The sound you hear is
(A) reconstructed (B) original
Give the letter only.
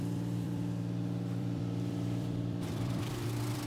A